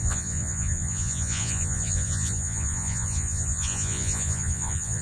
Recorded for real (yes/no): no